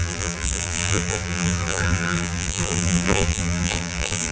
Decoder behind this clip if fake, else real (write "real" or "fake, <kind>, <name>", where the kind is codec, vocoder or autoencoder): fake, vocoder, BigVGAN v2